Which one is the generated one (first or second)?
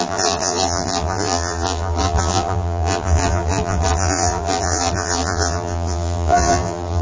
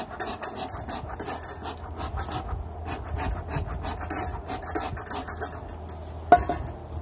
first